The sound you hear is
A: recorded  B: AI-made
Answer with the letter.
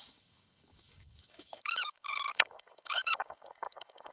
B